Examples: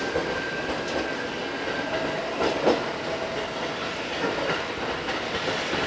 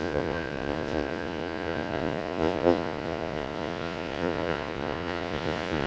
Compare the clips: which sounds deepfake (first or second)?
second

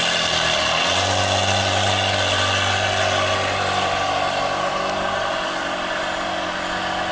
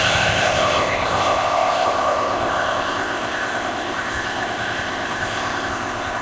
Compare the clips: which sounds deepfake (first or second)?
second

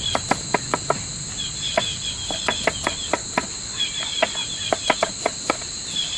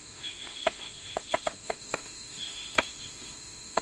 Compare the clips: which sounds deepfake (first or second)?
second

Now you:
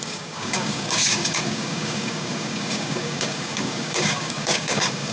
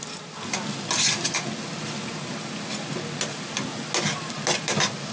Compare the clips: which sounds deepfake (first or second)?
first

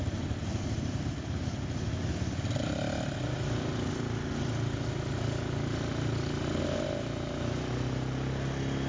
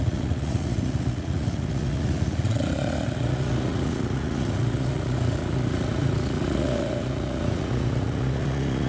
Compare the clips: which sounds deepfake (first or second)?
second